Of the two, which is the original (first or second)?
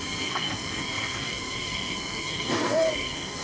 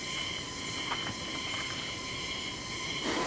second